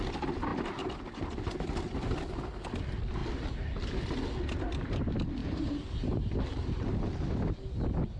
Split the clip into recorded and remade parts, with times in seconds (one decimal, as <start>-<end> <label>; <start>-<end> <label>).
0.0-5.4 recorded; 5.4-7.1 remade; 7.1-8.2 recorded